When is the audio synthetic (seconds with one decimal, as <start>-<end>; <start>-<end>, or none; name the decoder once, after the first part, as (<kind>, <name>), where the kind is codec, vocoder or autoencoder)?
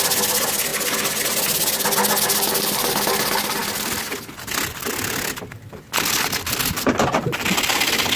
none